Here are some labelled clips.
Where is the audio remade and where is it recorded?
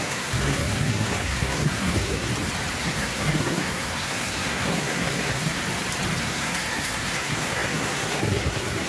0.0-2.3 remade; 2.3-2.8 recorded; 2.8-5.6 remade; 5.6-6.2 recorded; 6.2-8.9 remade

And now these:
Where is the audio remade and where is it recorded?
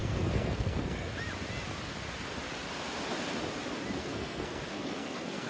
0.0-1.1 remade; 1.1-4.0 recorded; 4.0-5.5 remade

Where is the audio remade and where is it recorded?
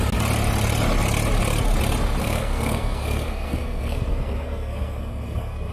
0.0-2.2 recorded; 2.2-5.7 remade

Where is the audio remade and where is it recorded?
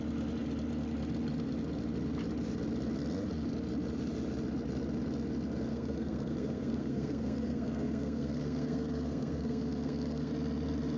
0.0-5.7 recorded; 5.7-10.3 remade; 10.3-11.0 recorded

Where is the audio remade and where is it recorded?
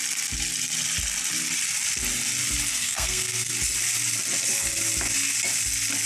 0.0-2.7 recorded; 2.7-3.5 remade; 3.5-6.1 recorded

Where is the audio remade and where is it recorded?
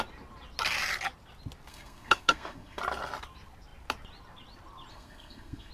0.0-1.7 recorded; 1.7-2.8 remade; 2.8-4.9 recorded; 4.9-5.7 remade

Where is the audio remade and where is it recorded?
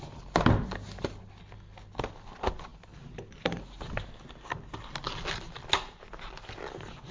0.0-7.1 recorded